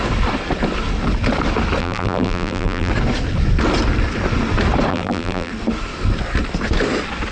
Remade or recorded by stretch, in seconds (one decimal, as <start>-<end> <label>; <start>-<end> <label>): 0.0-1.8 recorded; 1.8-2.9 remade; 2.9-4.9 recorded; 4.9-5.5 remade; 5.5-7.3 recorded